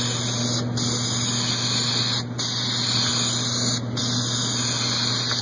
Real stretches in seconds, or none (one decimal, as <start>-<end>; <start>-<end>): 0.0-5.4